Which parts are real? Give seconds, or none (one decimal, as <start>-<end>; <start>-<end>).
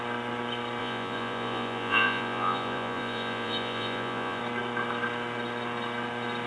0.0-0.8; 4.4-6.5